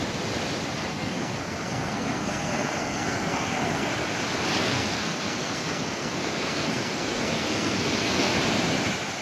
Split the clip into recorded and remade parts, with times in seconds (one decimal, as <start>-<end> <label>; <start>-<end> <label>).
0.0-0.9 recorded; 0.9-3.9 remade; 3.9-4.6 recorded; 4.6-8.3 remade; 8.3-9.2 recorded